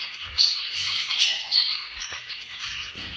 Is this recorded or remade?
remade